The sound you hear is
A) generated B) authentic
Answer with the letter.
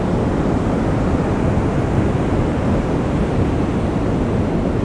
B